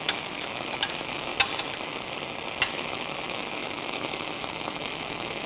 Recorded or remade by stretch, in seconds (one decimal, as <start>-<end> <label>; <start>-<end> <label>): 0.0-1.3 remade; 1.3-2.7 recorded; 2.7-5.5 remade